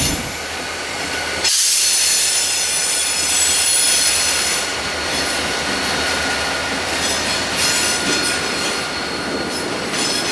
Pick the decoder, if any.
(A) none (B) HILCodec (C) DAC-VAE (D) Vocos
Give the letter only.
A